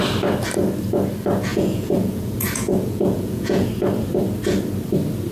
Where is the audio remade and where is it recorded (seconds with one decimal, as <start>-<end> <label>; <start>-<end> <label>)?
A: 0.0-1.5 recorded; 1.5-3.7 remade; 3.7-5.3 recorded